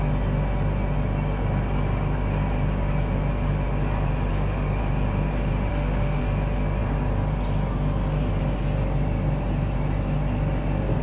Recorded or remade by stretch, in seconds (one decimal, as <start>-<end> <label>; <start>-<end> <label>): 0.0-4.3 recorded; 4.3-4.8 remade; 4.8-5.7 recorded; 5.7-6.2 remade; 6.2-11.0 recorded